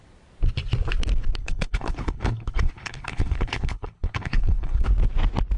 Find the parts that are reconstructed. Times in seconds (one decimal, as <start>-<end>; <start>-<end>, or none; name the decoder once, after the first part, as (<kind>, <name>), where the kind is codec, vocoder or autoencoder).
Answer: 1.4-4.8 (codec, HILCodec)